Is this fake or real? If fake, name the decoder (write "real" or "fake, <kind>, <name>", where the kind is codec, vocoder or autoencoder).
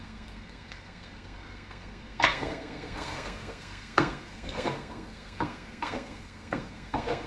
fake, codec, SNAC